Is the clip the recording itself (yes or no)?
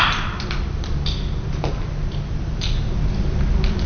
yes